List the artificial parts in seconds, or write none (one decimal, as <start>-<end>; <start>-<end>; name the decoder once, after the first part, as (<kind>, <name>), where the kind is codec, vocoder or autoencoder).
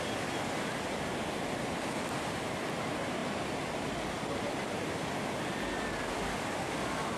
none